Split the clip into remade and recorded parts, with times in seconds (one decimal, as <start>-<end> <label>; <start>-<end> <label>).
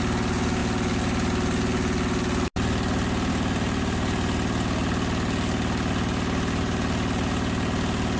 0.0-8.2 recorded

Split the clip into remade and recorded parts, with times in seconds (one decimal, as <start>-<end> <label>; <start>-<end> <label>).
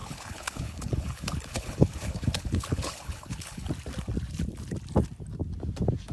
0.0-3.7 remade; 3.7-6.1 recorded